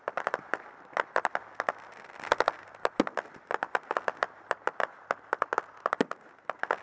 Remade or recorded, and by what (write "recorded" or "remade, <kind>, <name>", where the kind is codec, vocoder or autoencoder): recorded